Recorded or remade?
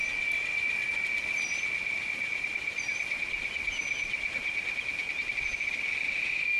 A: recorded